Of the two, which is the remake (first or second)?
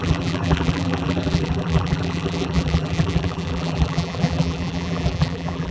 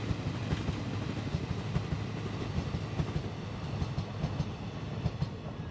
first